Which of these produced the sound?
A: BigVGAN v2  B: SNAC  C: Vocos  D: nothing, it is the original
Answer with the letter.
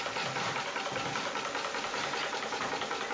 D